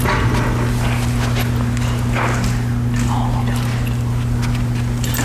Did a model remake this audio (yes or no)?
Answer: no